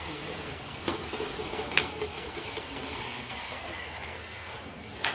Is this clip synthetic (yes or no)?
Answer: yes